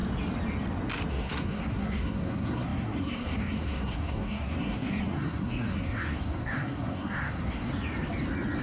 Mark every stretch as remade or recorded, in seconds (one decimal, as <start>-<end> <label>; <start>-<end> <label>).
0.0-1.1 recorded; 1.1-7.7 remade; 7.7-8.6 recorded